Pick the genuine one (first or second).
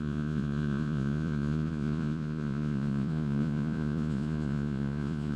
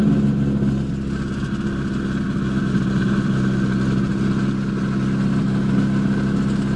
second